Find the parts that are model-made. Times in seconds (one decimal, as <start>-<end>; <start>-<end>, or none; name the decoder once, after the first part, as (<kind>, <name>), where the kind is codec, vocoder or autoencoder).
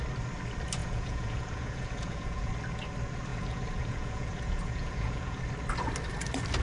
0.8-2.5 (vocoder, Vocos); 3.3-5.4